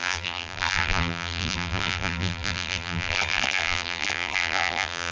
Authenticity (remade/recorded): remade